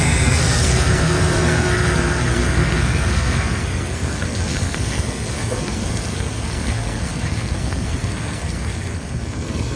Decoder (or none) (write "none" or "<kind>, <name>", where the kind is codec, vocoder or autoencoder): codec, SNAC